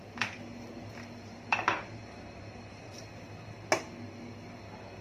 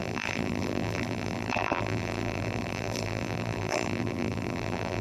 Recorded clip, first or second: first